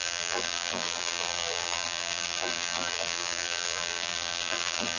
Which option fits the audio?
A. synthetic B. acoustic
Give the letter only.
A